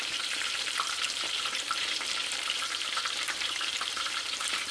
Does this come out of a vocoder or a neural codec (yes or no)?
yes